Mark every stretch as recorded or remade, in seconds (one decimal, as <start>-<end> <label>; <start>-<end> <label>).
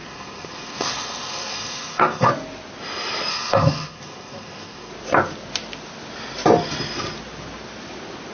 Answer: 0.0-2.3 remade; 2.3-3.3 recorded; 3.3-4.9 remade; 4.9-8.3 recorded